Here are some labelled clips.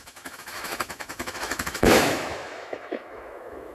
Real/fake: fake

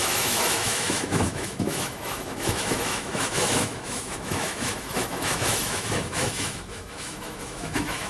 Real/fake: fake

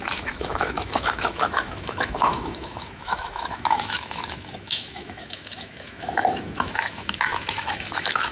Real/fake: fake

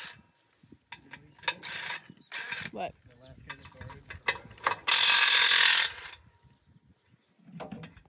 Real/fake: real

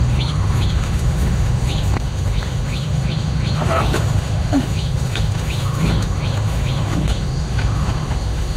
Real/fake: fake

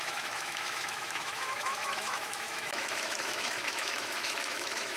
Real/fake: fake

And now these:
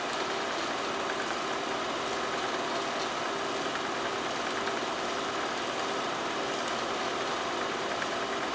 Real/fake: real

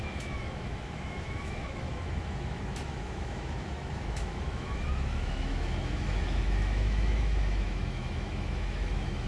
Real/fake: fake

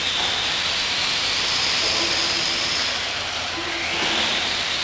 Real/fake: real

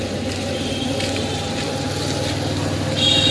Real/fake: real